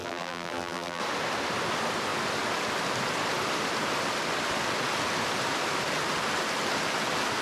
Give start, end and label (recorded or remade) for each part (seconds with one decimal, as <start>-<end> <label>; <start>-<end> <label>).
0.0-1.0 remade; 1.0-7.4 recorded

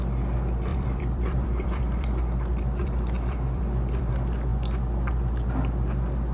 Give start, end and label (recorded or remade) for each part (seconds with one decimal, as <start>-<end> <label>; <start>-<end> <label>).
0.0-0.7 recorded; 0.7-2.2 remade; 2.2-2.8 recorded; 2.8-4.1 remade; 4.1-6.3 recorded